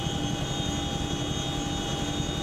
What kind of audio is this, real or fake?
real